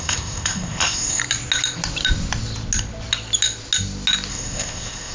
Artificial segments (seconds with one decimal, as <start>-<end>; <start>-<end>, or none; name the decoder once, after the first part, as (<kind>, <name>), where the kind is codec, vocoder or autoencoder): 0.0-1.2 (codec, ZipCodec); 4.3-5.1